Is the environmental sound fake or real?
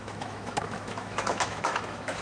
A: fake